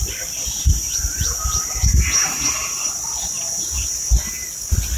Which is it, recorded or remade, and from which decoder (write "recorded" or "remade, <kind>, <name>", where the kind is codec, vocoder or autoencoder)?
recorded